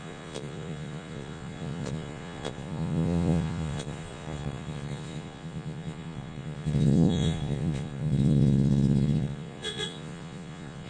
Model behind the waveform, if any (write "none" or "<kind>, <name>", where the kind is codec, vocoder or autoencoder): vocoder, Vocos